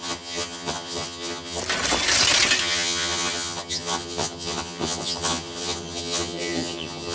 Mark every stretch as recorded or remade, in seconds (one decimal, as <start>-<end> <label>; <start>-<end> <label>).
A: 0.0-1.6 remade; 1.6-2.6 recorded; 2.6-7.1 remade